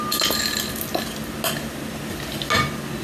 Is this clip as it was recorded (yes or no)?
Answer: yes